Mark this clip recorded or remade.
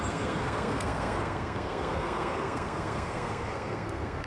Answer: remade